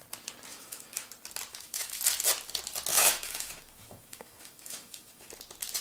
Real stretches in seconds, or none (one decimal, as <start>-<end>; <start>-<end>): 0.0-0.5; 1.1-1.5; 2.0-2.9; 5.3-5.8